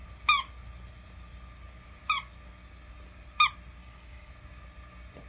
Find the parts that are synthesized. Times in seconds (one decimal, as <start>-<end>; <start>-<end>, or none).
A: 3.8-4.3